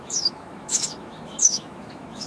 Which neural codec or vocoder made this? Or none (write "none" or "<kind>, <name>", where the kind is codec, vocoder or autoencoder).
autoencoder, DAC-VAE